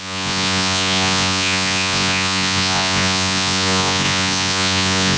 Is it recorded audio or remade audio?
remade